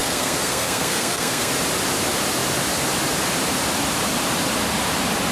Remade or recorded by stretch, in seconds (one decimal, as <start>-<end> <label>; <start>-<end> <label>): 0.0-1.5 remade; 1.5-5.3 recorded